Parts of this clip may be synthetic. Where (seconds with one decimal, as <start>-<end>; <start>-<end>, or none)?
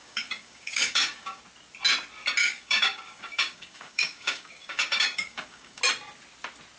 0.0-1.4; 2.4-5.8